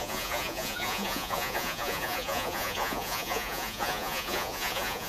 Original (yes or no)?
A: no